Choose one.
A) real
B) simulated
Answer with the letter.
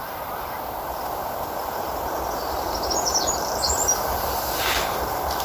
A